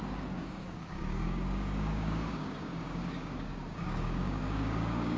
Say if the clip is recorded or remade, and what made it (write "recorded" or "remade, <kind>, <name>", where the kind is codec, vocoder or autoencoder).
remade, codec, DAC